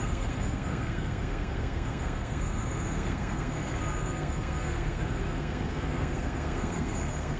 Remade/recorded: remade